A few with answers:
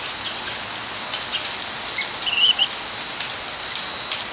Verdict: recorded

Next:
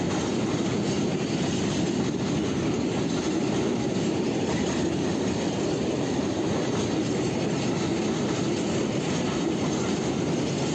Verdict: recorded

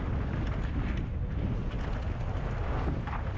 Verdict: recorded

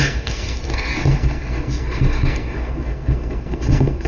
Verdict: remade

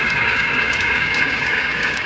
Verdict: remade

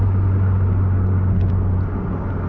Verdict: recorded